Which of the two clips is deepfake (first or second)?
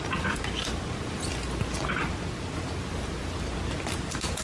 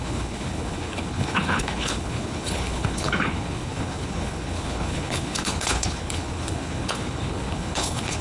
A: second